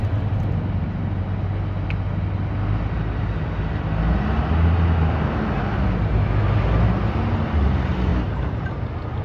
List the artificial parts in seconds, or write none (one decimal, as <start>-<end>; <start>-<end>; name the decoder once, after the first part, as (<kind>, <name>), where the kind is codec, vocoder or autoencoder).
none

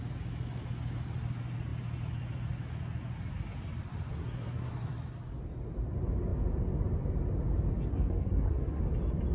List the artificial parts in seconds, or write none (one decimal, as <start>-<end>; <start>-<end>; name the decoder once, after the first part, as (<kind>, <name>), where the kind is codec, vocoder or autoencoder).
4.1-4.7 (codec, SNAC); 7.9-8.8

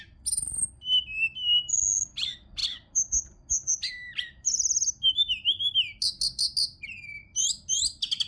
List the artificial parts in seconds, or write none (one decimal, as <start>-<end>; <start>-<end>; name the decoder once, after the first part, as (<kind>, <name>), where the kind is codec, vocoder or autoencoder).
none

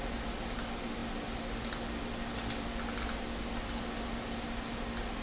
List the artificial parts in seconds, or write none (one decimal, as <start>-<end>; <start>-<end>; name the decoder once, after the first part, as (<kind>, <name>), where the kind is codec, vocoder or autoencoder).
none

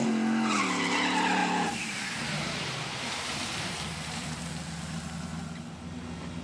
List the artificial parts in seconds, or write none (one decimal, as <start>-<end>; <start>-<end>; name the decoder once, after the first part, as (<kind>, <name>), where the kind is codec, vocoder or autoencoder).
1.4-4.4 (vocoder, BigVGAN v2)

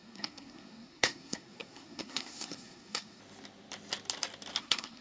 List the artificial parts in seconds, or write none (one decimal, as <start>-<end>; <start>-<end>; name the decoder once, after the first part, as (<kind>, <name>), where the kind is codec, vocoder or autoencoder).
0.0-3.2 (codec, SNAC); 4.6-5.0

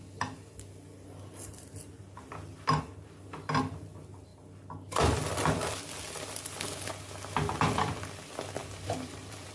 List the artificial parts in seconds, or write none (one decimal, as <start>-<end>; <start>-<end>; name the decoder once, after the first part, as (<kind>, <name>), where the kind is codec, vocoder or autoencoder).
8.6-9.5 (vocoder, BigVGAN v2)